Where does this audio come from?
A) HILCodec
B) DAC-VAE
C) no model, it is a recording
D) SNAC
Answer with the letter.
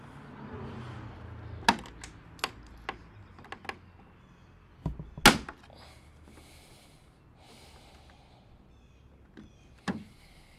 C